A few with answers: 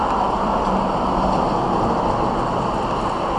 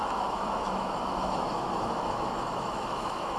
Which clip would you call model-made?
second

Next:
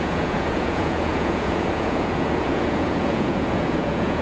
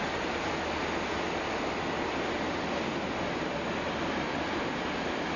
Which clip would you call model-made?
first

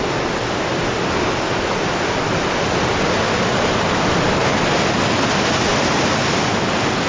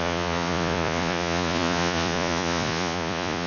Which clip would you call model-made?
second